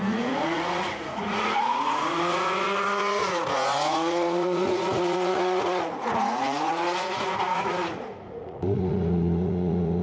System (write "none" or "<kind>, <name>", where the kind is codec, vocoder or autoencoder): vocoder, Vocos